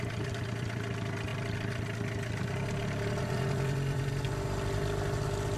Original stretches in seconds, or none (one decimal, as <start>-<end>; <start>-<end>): 0.0-5.6